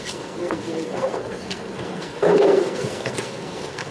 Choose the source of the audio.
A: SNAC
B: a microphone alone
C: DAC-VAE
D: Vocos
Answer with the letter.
A